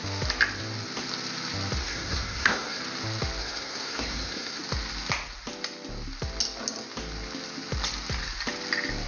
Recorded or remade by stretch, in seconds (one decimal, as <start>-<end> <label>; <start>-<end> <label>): 0.0-1.8 recorded; 1.8-2.8 remade; 2.8-3.4 recorded; 3.4-4.6 remade; 4.6-9.1 recorded